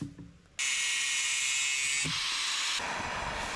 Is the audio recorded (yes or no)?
yes